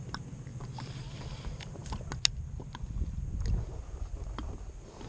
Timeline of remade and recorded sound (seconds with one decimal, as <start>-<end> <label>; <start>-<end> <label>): 0.0-5.1 recorded